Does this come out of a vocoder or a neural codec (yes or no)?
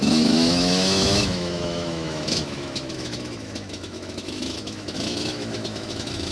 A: yes